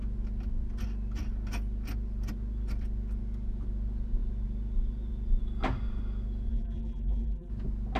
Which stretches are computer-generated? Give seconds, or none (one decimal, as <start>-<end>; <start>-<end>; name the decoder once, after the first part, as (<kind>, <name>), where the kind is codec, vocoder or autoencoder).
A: 6.5-7.5 (vocoder, BigVGAN v2)